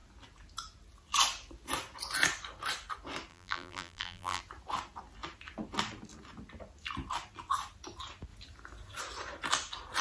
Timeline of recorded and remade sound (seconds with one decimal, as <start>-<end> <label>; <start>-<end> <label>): 0.0-3.3 recorded; 3.3-4.4 remade; 4.4-10.0 recorded